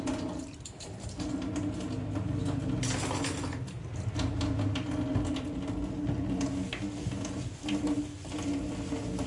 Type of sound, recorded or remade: recorded